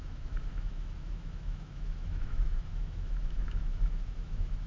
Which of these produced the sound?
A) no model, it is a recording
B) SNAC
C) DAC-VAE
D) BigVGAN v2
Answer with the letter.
C